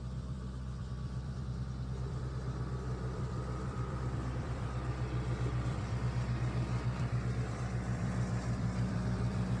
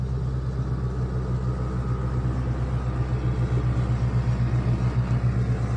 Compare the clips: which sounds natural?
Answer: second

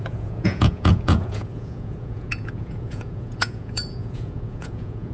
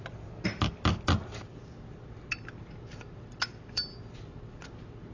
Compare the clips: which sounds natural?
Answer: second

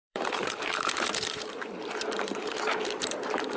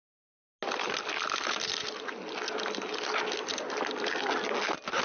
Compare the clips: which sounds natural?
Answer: second